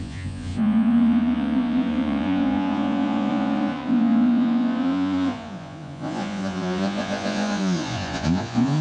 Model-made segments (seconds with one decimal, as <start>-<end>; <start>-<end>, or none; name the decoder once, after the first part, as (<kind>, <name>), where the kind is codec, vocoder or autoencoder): 0.0-8.8 (vocoder, Vocos)